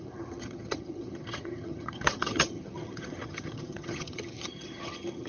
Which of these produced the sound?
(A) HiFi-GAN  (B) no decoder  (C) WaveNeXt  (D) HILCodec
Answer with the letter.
A